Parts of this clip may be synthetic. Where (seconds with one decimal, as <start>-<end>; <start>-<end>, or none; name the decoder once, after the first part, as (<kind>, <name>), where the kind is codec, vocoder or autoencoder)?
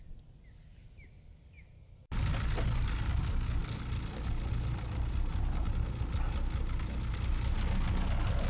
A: none